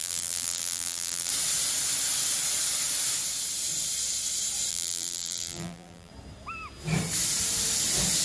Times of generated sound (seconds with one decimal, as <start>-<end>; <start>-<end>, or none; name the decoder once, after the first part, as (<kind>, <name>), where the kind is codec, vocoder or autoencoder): 0.0-1.3 (vocoder, BigVGAN v2); 4.7-6.1